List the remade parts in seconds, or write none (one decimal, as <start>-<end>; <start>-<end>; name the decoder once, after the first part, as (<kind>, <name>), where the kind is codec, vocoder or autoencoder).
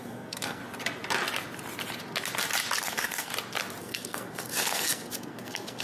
0.0-0.6 (codec, SNAC); 2.8-3.3; 3.8-5.8